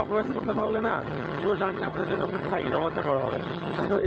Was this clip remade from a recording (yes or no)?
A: yes